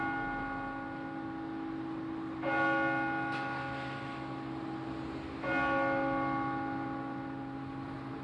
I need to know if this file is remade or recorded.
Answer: recorded